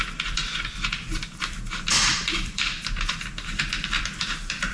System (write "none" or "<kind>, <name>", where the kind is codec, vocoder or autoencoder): vocoder, BigVGAN v2